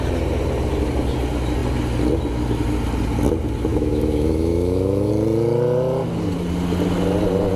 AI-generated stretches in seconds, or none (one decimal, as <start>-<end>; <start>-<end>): 3.7-5.1